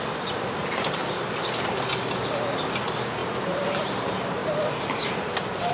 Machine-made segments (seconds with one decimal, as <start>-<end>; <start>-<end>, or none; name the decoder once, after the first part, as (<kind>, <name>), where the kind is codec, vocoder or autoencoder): 0.0-1.0 (vocoder, BigVGAN v2); 2.8-5.7